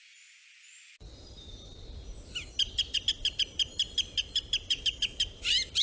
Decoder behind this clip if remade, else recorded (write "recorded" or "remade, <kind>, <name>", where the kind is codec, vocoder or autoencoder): recorded